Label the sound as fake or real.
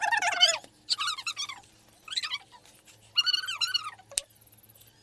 real